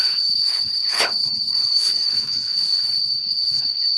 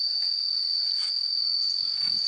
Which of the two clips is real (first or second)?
second